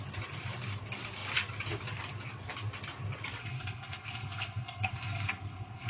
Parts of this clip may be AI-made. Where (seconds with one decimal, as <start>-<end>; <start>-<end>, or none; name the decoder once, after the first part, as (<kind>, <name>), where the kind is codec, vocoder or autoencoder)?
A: 3.4-5.9 (codec, SNAC)